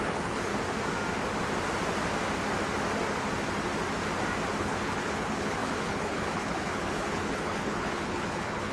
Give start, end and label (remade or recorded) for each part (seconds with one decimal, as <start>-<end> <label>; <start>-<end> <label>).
0.0-0.5 remade; 0.5-4.6 recorded; 4.6-8.7 remade